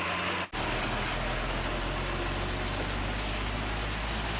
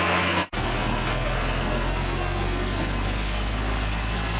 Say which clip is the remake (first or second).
second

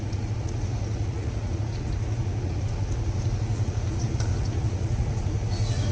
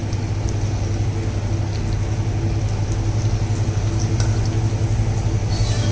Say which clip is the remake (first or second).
first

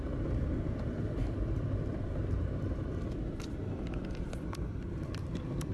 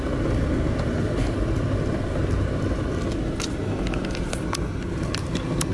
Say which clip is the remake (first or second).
first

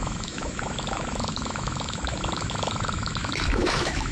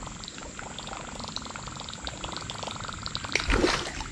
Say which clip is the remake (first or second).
first